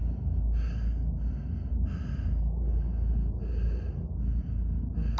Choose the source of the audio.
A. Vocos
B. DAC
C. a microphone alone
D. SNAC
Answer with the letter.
C